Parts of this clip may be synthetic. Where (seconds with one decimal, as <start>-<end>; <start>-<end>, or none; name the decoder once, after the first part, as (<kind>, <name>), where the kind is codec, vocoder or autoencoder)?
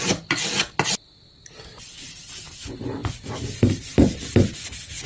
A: none